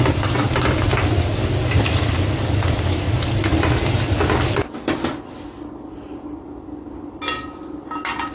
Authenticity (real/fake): real